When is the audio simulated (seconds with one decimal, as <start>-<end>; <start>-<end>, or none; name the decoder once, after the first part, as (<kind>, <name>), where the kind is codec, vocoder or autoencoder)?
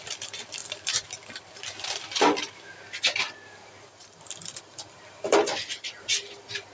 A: 0.0-0.6 (vocoder, BigVGAN v2); 4.6-6.7